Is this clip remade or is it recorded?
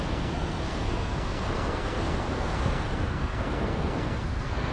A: remade